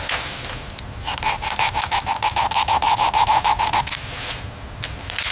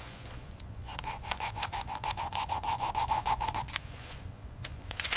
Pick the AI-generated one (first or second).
second